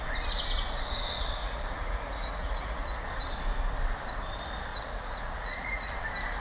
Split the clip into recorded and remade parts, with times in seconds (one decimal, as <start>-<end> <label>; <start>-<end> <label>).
0.0-1.4 recorded; 1.4-3.0 remade; 3.0-4.7 recorded; 4.7-5.9 remade; 5.9-6.4 recorded